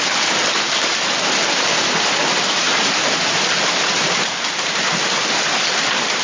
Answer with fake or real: fake